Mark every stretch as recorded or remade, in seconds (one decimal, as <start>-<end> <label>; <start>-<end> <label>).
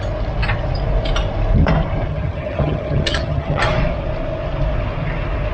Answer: 0.0-2.1 recorded; 2.1-3.6 remade; 3.6-5.5 recorded